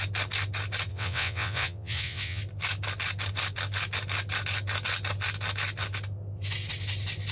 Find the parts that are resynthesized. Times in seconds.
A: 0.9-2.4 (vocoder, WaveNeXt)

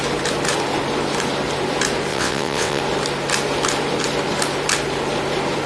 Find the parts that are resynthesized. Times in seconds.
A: 2.1-2.8 (vocoder, WaveNeXt)

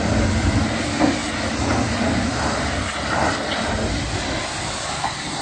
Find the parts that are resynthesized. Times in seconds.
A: none